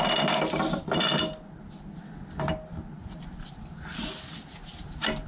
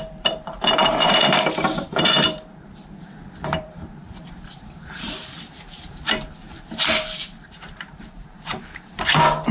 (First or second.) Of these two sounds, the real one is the first